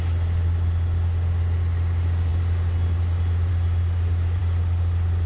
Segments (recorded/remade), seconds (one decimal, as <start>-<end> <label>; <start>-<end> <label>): 0.0-5.3 recorded